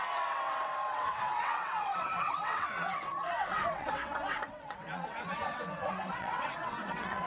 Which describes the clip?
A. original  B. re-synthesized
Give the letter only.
B